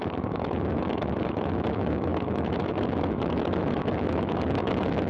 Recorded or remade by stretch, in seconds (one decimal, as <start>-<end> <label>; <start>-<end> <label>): 0.0-5.1 remade